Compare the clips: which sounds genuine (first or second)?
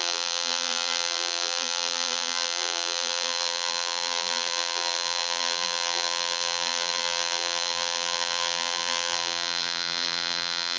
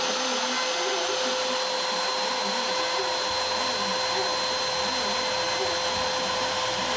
second